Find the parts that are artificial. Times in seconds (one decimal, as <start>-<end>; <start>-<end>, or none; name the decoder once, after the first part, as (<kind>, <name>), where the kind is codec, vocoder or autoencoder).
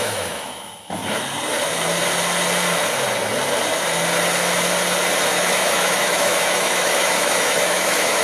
0.0-1.0 (autoencoder, DAC-VAE); 5.3-8.2